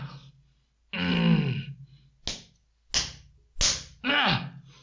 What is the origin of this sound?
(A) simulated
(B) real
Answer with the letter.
B